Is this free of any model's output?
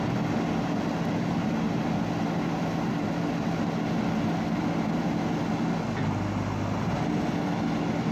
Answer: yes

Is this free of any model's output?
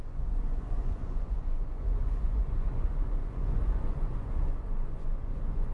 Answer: no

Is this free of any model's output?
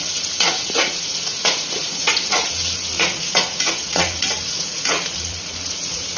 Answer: no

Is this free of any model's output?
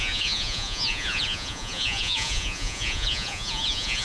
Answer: no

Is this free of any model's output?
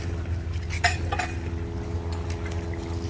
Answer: yes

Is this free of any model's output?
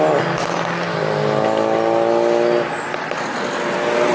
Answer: yes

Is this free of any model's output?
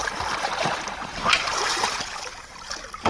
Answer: yes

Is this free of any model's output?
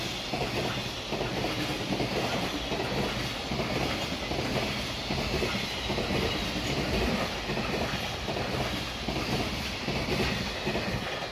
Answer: yes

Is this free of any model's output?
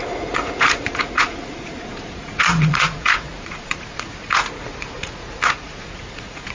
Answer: no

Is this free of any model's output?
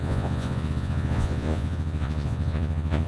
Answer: no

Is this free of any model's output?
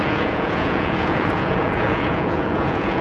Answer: no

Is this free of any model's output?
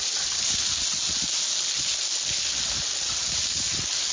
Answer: yes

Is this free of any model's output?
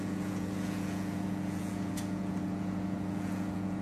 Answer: no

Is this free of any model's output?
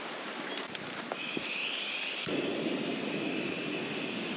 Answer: yes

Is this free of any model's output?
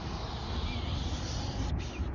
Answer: yes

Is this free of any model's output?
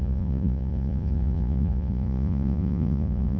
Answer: no